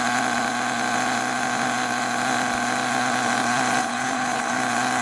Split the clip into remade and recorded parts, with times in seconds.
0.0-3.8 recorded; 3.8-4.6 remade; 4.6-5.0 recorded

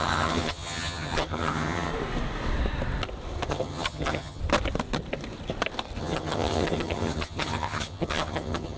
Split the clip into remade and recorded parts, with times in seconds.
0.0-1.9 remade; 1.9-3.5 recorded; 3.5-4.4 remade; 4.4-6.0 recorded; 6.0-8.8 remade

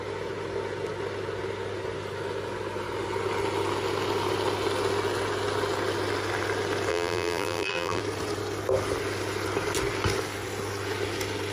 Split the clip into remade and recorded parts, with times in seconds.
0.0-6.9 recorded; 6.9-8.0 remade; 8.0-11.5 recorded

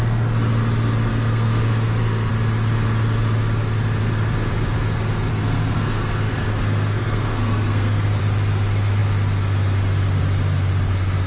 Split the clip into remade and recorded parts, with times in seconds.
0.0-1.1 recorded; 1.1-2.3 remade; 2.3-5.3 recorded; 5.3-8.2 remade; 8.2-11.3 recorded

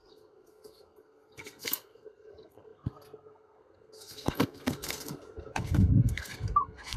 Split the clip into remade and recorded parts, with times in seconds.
0.0-7.0 remade

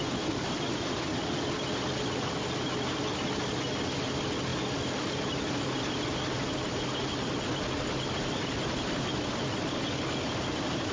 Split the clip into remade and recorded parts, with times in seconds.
0.0-10.9 recorded